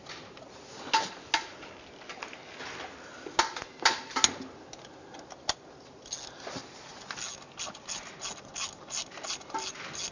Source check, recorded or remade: recorded